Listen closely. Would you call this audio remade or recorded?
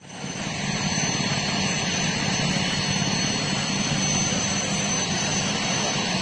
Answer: recorded